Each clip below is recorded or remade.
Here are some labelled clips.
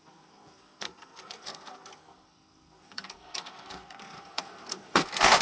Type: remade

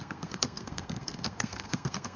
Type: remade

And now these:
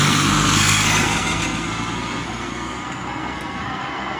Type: remade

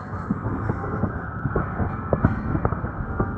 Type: remade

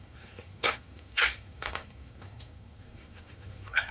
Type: remade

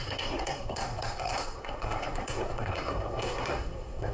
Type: remade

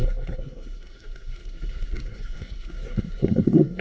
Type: remade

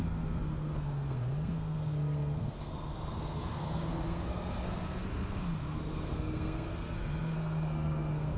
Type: remade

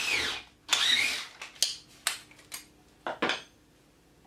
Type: recorded